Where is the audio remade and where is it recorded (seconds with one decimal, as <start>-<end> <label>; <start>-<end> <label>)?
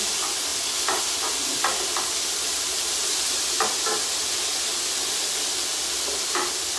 0.0-6.8 recorded